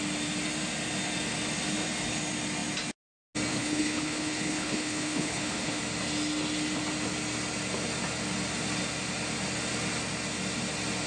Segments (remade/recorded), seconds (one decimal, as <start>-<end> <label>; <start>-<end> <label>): 0.0-3.5 recorded; 3.5-5.8 remade; 5.8-11.1 recorded